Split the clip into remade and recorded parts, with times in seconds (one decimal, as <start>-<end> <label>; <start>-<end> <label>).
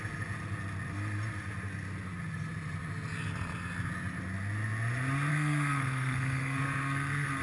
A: 0.0-5.3 recorded; 5.3-7.4 remade